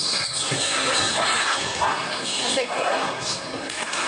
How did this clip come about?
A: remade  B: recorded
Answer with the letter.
A